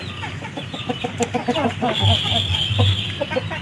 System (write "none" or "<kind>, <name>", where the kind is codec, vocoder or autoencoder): none